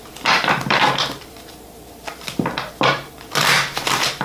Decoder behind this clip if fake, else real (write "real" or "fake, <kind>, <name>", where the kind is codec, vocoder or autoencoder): fake, vocoder, BigVGAN v2